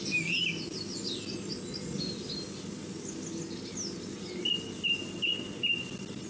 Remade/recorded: recorded